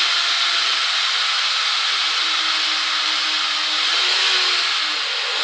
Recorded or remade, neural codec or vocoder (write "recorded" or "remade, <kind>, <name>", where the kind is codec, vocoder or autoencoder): recorded